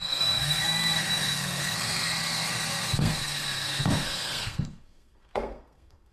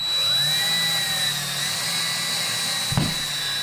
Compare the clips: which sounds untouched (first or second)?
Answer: second